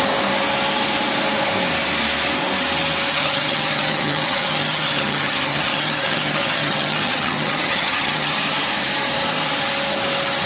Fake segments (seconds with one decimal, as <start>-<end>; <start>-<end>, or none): 3.1-8.3